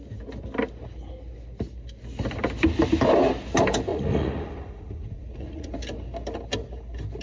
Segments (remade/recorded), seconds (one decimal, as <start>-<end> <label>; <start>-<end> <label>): 0.0-3.9 recorded; 3.9-5.7 remade; 5.7-7.2 recorded